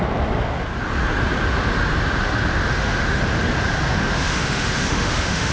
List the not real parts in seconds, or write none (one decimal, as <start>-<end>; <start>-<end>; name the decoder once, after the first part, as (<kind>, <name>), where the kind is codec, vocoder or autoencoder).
2.7-3.2 (autoencoder, DAC-VAE); 3.9-5.5